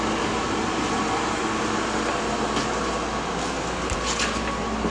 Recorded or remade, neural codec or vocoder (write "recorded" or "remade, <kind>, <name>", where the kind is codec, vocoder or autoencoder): recorded